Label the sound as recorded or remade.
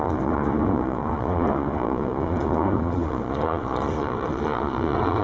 remade